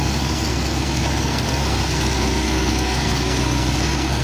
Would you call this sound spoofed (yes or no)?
yes